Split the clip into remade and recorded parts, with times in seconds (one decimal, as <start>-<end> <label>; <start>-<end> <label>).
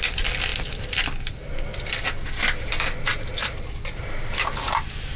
0.0-5.2 recorded